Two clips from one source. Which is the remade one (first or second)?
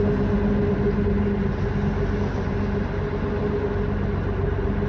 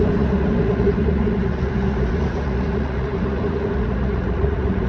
second